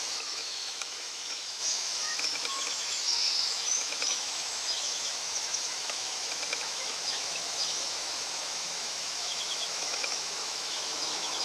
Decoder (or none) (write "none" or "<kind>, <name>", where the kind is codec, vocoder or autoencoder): autoencoder, DAC-VAE